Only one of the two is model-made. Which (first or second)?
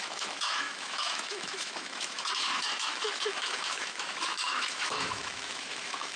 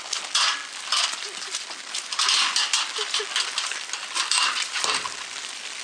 first